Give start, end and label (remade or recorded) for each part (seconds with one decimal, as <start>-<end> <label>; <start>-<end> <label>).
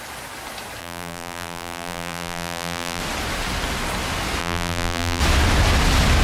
0.0-0.8 recorded; 0.8-3.0 remade; 3.0-4.4 recorded; 4.4-5.2 remade; 5.2-6.2 recorded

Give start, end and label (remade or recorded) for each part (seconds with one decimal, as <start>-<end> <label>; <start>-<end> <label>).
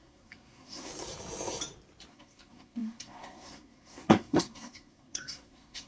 0.0-0.9 remade; 0.9-2.1 recorded; 2.1-5.9 remade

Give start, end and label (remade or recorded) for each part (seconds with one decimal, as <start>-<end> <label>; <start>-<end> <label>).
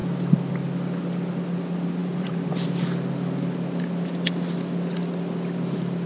0.0-2.0 recorded; 2.0-2.5 remade; 2.5-6.1 recorded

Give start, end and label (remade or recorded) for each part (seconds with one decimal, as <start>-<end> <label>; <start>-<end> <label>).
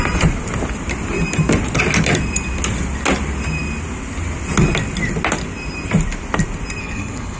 0.0-6.8 recorded; 6.8-7.4 remade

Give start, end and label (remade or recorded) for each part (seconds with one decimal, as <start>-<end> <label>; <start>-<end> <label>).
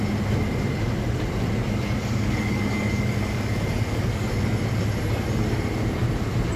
0.0-2.0 recorded; 2.0-4.4 remade; 4.4-6.6 recorded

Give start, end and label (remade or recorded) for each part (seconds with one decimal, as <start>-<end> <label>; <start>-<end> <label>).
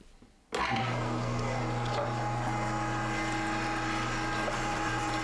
0.0-0.8 recorded; 0.8-1.6 remade; 1.6-5.2 recorded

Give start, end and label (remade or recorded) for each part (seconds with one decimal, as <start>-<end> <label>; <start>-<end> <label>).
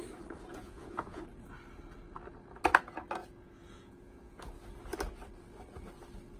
0.0-0.5 recorded; 0.5-1.2 remade; 1.2-3.2 recorded; 3.2-4.5 remade; 4.5-6.4 recorded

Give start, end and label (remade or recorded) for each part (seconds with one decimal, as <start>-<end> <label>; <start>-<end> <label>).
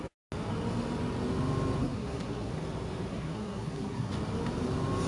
0.0-1.8 recorded; 1.8-2.5 remade; 2.5-3.1 recorded; 3.1-4.1 remade; 4.1-5.1 recorded